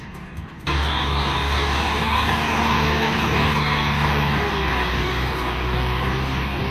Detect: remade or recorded remade